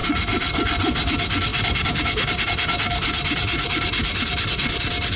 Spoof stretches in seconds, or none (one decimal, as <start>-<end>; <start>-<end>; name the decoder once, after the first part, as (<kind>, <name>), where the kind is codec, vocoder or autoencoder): none